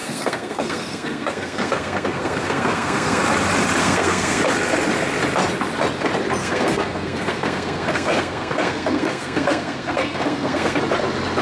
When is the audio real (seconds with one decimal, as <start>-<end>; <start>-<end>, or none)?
3.2-3.8; 4.4-6.4; 10.8-11.4